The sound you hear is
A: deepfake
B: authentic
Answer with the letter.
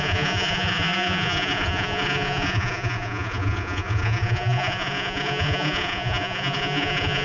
A